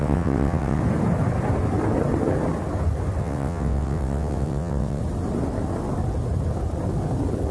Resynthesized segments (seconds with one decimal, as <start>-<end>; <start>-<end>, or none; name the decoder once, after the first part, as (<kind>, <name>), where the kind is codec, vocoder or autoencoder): 0.0-0.8 (vocoder, WaveNeXt); 3.2-5.0